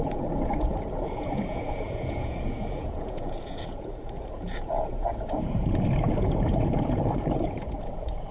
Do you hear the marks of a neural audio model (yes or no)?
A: yes